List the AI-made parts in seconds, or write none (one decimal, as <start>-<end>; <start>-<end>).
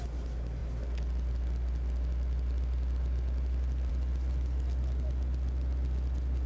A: none